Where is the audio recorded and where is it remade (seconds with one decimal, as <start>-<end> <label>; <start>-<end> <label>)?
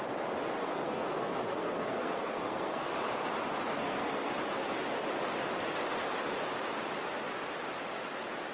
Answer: 0.0-0.6 recorded; 0.6-2.9 remade; 2.9-3.8 recorded; 3.8-4.3 remade; 4.3-8.5 recorded